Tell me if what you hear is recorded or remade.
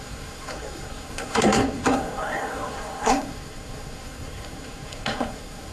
remade